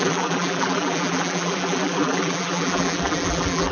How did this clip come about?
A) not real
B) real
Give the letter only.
A